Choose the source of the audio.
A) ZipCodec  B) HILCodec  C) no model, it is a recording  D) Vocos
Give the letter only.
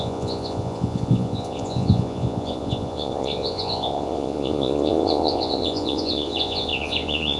D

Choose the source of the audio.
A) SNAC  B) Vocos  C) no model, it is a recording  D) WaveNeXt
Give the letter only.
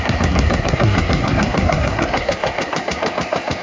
A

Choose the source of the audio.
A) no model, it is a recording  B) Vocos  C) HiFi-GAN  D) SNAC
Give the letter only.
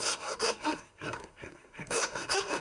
D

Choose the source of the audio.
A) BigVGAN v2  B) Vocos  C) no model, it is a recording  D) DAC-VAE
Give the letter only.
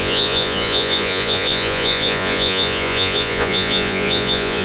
B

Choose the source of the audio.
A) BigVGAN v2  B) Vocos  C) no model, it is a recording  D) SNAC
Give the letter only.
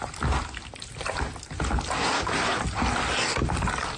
C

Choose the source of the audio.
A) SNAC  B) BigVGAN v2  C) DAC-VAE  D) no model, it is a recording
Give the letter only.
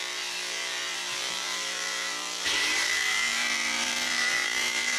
B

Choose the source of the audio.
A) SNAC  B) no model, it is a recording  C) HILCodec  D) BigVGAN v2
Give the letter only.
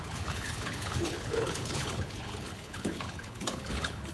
C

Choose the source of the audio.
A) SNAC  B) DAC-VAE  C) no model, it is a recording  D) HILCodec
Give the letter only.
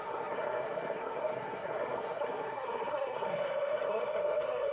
A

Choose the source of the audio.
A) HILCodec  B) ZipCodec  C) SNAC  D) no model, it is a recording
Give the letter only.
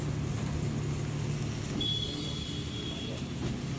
D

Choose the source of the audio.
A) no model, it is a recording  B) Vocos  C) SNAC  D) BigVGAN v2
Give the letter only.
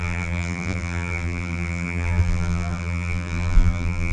D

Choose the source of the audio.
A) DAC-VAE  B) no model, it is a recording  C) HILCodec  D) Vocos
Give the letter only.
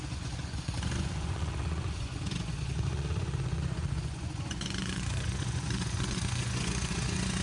D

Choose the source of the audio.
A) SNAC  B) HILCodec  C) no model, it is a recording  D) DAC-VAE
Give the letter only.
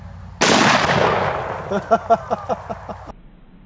C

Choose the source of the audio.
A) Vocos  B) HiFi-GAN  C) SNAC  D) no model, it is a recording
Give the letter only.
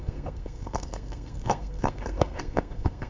C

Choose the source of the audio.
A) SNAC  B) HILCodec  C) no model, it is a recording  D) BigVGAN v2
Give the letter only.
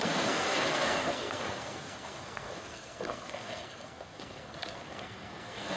A